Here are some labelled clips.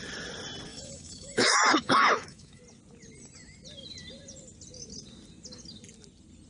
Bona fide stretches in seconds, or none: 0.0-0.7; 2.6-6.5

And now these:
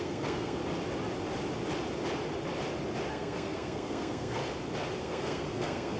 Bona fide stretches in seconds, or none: 0.6-3.1; 4.4-5.0

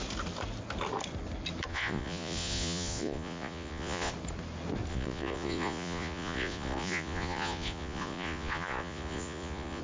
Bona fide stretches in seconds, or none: 0.0-1.7; 4.1-4.9

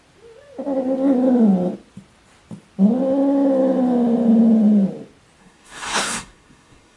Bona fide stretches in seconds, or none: 0.0-5.4